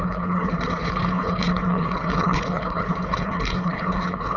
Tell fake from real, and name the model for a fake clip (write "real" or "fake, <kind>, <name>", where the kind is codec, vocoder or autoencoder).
fake, codec, HILCodec